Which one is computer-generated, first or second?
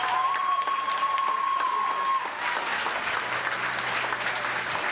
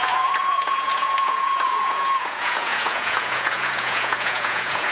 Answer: second